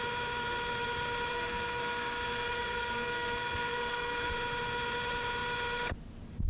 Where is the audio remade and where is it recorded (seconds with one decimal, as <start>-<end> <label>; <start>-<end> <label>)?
0.0-1.3 recorded; 1.3-4.3 remade; 4.3-6.5 recorded